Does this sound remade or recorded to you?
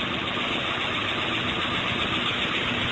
recorded